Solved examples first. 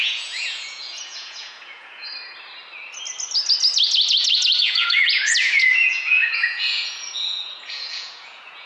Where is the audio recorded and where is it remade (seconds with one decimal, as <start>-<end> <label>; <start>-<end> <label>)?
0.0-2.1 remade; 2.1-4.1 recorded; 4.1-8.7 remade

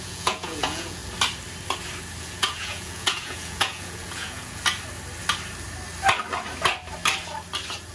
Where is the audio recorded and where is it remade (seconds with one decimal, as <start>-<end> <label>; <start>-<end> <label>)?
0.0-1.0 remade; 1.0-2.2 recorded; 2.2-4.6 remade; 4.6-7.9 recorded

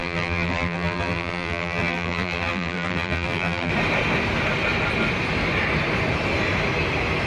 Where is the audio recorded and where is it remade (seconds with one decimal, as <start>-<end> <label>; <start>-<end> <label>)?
0.0-3.7 remade; 3.7-7.3 recorded